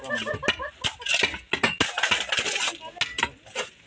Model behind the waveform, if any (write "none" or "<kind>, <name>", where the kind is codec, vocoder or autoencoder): none